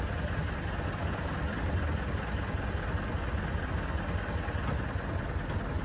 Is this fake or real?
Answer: real